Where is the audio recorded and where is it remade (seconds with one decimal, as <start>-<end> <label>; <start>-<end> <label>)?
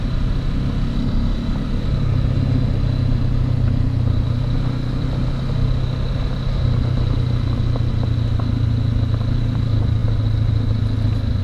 0.0-11.4 recorded